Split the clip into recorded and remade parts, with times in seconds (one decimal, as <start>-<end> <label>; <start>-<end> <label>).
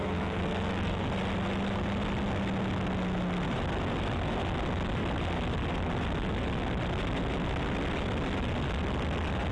0.0-1.1 remade; 1.1-9.5 recorded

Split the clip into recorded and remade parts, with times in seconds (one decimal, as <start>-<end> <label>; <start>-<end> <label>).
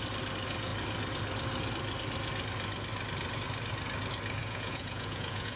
0.0-4.4 recorded; 4.4-5.6 remade